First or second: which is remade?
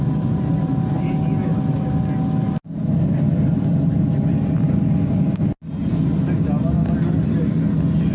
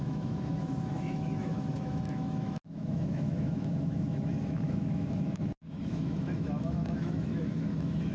second